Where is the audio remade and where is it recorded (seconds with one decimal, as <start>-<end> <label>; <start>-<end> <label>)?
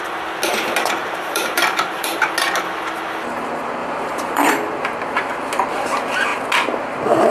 0.0-1.0 recorded; 1.0-2.3 remade; 2.3-3.8 recorded; 3.8-4.5 remade; 4.5-7.3 recorded